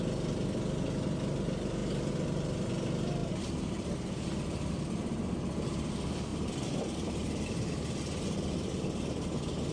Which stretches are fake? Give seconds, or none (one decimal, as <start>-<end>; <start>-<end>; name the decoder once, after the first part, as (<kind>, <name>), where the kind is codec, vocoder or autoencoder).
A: 3.2-4.7 (vocoder, BigVGAN v2); 6.3-7.8